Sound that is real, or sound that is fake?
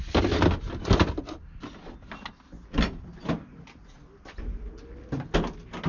real